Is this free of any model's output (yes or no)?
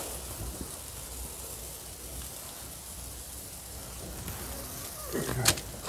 yes